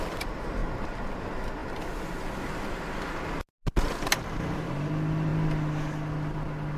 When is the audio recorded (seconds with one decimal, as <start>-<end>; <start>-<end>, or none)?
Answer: 0.0-6.8